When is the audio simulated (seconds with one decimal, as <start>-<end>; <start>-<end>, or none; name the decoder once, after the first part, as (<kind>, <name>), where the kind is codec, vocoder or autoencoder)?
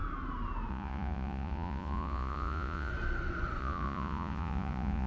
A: 0.7-2.9 (vocoder, Vocos); 3.6-5.1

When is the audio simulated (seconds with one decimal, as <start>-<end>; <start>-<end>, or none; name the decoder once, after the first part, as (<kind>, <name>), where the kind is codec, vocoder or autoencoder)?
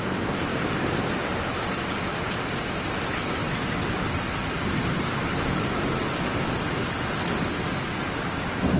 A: 3.4-6.6 (vocoder, BigVGAN v2)